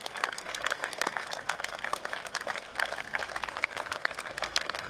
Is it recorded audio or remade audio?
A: remade